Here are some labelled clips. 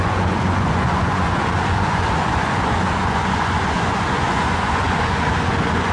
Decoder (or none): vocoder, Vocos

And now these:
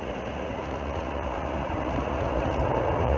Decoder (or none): vocoder, Vocos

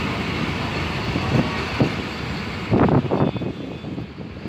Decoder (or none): none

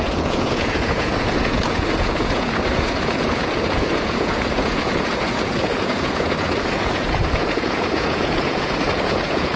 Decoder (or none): vocoder, Vocos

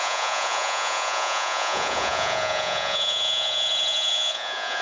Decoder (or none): vocoder, Vocos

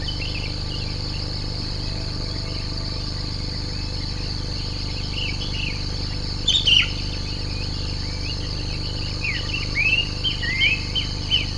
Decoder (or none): none